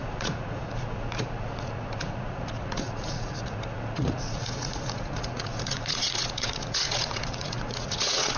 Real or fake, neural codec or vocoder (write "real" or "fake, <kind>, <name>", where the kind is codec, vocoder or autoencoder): fake, vocoder, Vocos